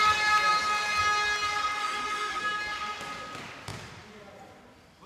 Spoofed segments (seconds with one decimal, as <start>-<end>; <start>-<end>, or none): 1.8-2.4